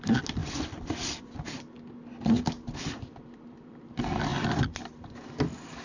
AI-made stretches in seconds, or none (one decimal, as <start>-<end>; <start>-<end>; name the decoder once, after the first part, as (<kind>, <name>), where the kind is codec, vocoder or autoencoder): none